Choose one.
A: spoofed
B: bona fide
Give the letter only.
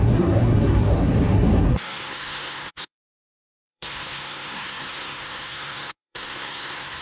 A